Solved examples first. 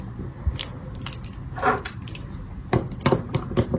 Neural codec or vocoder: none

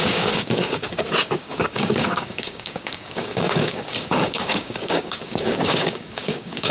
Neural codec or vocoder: codec, DAC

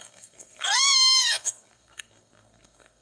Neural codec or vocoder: codec, SNAC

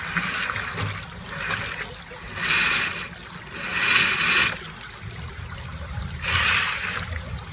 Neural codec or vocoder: none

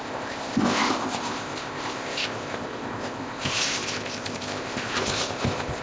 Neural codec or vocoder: codec, ZipCodec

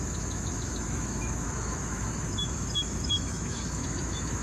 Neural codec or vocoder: autoencoder, DAC-VAE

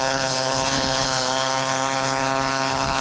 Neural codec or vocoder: codec, HILCodec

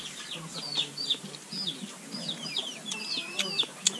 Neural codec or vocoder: none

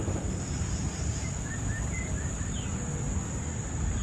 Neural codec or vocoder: none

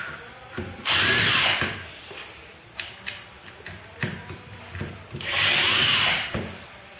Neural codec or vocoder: vocoder, BigVGAN v2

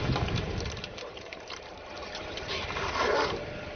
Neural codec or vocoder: vocoder, BigVGAN v2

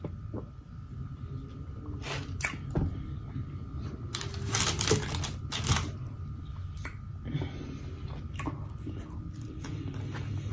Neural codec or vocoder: none